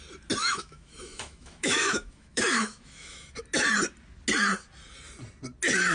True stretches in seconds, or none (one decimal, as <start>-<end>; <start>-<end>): 0.0-0.4; 3.4-5.9